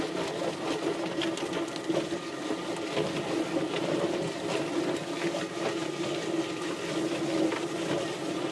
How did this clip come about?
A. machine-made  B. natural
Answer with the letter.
B